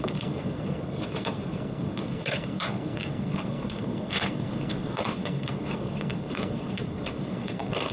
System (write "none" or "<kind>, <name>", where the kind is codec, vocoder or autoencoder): codec, SNAC